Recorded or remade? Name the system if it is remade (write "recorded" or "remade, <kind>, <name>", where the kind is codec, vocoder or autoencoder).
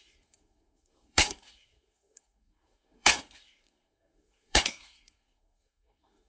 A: remade, codec, SNAC